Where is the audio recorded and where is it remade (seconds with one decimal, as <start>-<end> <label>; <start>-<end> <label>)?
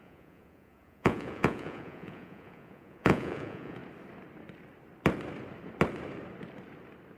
0.0-3.8 remade; 3.8-7.2 recorded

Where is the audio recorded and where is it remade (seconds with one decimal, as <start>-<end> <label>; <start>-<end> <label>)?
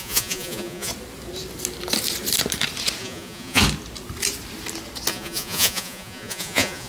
0.0-0.9 remade; 0.9-3.0 recorded; 3.0-3.6 remade; 3.6-5.1 recorded; 5.1-6.9 remade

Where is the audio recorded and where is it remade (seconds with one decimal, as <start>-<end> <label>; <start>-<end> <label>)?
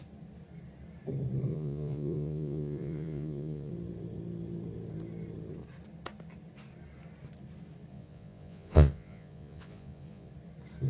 0.0-1.5 recorded; 1.5-3.7 remade; 3.7-7.9 recorded; 7.9-10.3 remade; 10.3-10.9 recorded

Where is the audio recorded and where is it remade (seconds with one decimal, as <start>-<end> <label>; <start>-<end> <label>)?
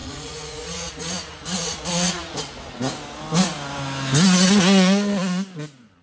0.0-2.4 remade; 2.4-6.0 recorded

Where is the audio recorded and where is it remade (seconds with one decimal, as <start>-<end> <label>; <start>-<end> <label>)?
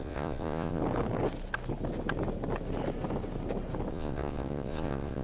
0.0-0.8 remade; 0.8-3.9 recorded; 3.9-5.2 remade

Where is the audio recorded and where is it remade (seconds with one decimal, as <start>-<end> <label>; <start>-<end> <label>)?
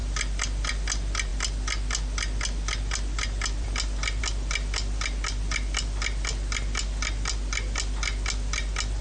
0.0-9.0 recorded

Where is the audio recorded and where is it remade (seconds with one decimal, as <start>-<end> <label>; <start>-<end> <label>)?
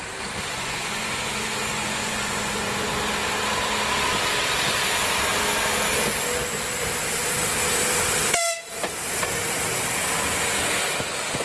0.0-0.5 recorded; 0.5-2.9 remade; 2.9-11.4 recorded